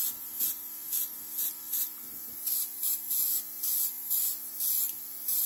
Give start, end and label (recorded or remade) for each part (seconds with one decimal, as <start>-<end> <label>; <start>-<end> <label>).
0.0-5.5 recorded